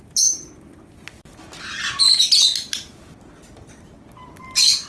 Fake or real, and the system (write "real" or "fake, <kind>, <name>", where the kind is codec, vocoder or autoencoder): real